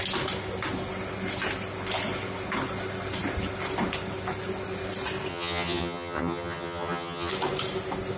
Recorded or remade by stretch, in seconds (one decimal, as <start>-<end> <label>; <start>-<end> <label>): 0.0-5.3 recorded; 5.3-7.3 remade; 7.3-8.2 recorded